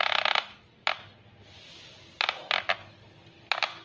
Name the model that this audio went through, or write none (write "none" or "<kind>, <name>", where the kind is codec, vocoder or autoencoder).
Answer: none